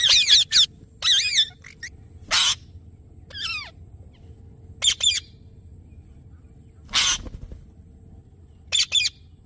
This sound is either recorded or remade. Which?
recorded